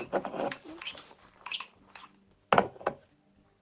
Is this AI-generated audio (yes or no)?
no